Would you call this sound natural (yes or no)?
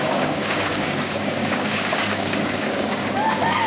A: no